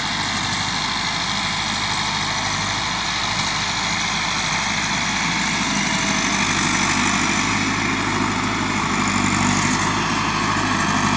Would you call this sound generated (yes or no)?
no